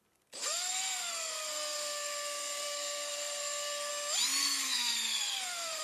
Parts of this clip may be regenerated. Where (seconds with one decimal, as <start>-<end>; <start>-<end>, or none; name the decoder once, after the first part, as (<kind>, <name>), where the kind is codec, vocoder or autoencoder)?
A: 0.4-3.9 (codec, SNAC); 4.4-5.8